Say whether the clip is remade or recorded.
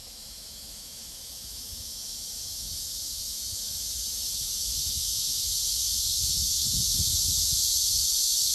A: remade